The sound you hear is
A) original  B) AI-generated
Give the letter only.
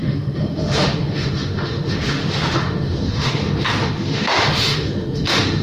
B